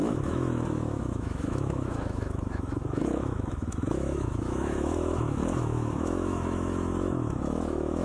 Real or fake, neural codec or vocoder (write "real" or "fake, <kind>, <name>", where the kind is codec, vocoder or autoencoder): fake, autoencoder, DAC-VAE